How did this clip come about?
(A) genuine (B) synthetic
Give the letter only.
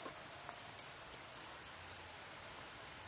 A